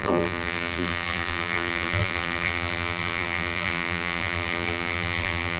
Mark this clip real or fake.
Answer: fake